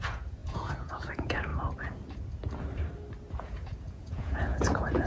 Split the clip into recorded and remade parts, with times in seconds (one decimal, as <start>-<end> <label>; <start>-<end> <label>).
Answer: 0.0-1.5 remade; 1.5-3.4 recorded; 3.4-5.1 remade